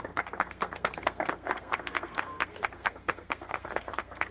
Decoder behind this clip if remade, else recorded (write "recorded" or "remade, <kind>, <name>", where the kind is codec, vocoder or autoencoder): remade, codec, SNAC